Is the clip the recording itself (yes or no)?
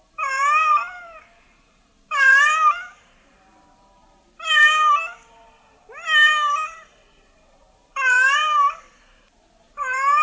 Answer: no